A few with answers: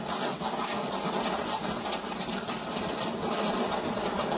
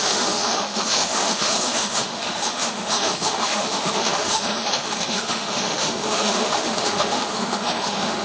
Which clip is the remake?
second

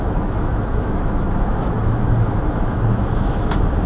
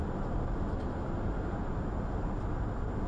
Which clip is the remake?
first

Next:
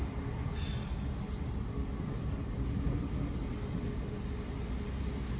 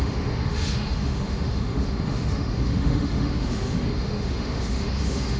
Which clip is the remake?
second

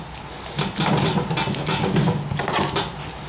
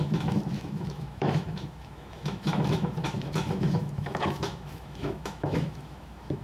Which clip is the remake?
second